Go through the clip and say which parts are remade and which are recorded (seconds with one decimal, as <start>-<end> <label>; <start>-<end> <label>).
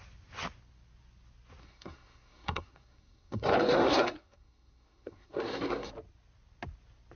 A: 0.0-1.6 recorded; 1.6-5.9 remade; 5.9-7.2 recorded